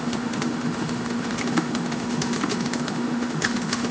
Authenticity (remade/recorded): remade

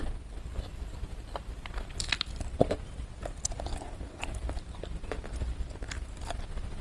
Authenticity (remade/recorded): recorded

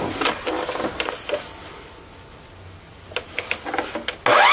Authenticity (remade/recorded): recorded